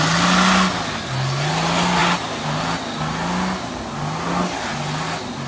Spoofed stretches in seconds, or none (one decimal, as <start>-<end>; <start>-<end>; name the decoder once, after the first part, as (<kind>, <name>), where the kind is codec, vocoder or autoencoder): none